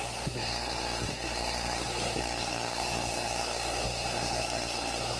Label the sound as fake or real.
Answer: fake